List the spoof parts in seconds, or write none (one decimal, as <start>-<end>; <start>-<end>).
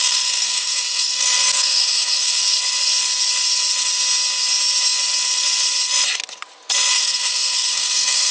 0.0-2.4; 6.9-8.3